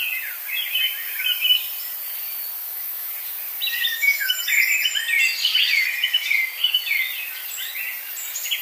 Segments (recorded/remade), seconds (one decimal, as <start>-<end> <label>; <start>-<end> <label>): 0.0-2.6 recorded; 2.6-3.1 remade; 3.1-3.9 recorded; 3.9-4.4 remade; 4.4-8.6 recorded